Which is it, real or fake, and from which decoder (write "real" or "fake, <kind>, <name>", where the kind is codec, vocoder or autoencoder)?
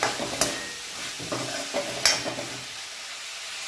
real